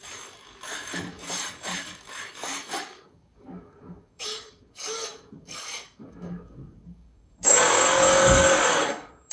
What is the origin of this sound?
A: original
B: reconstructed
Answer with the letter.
B